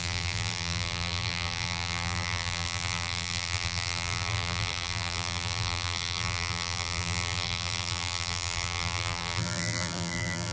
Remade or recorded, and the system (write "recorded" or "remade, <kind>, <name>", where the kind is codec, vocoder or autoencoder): remade, vocoder, BigVGAN v2